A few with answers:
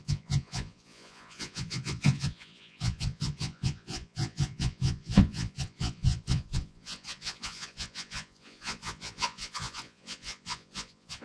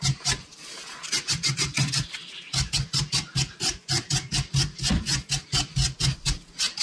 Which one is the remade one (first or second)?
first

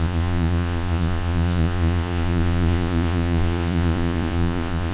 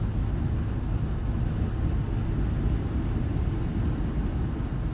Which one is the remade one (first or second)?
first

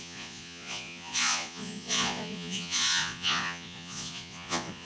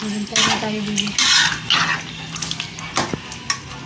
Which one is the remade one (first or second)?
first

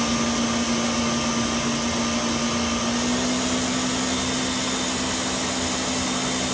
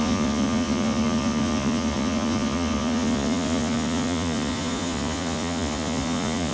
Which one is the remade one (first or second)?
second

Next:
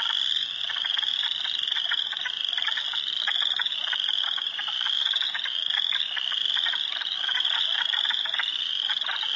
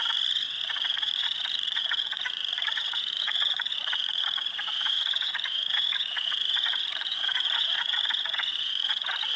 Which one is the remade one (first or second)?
second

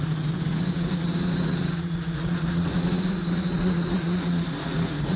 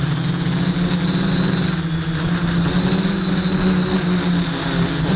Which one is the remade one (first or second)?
first